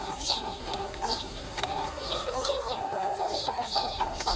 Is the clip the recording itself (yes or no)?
no